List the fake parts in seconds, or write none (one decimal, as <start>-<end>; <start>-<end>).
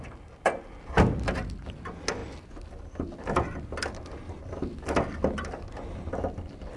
none